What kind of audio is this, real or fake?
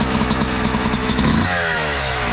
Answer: fake